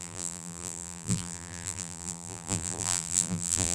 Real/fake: fake